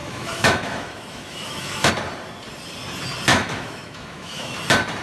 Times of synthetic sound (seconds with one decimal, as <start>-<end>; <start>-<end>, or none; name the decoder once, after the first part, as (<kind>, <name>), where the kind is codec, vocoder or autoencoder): 0.0-1.9 (autoencoder, DAC-VAE); 3.3-4.5

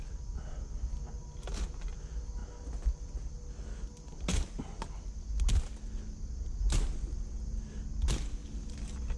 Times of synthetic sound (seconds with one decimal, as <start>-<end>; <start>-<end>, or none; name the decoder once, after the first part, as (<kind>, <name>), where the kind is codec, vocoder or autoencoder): none